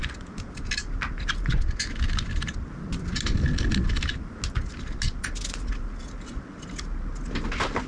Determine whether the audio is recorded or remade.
recorded